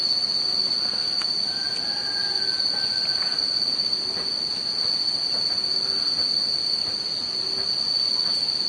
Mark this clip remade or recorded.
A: recorded